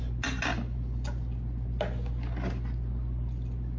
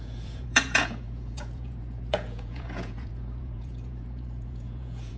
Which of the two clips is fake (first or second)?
second